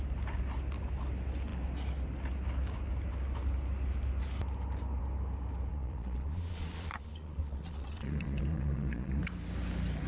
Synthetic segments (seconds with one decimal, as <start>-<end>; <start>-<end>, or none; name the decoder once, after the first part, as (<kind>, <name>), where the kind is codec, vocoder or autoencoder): 5.7-9.2 (vocoder, Vocos)